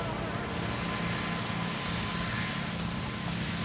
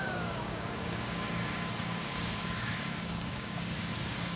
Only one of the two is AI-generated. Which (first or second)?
second